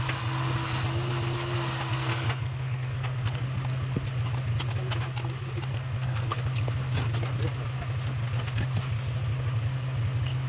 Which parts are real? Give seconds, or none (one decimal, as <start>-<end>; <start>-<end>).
0.0-1.9; 3.4-5.7; 6.4-10.5